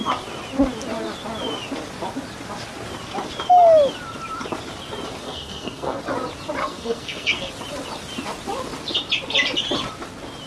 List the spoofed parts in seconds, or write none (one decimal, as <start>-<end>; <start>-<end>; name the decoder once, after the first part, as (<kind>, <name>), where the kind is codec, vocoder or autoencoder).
5.2-6.0 (codec, SNAC); 6.6-7.5